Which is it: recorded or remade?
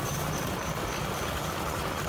recorded